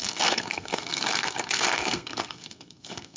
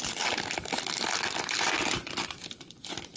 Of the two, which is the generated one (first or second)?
first